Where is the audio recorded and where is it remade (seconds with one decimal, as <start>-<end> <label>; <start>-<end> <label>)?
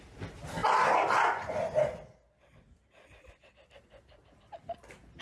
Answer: 0.0-5.2 recorded